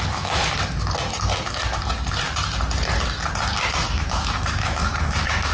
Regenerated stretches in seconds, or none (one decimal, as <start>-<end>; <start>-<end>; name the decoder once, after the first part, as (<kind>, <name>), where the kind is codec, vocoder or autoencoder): 0.0-0.4 (autoencoder, DAC-VAE); 3.7-5.5